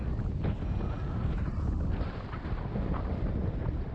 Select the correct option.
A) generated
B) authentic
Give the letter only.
B